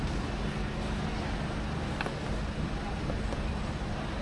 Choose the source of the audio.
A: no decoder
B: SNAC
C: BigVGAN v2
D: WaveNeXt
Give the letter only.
A